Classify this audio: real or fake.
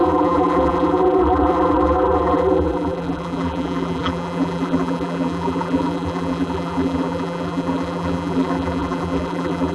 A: fake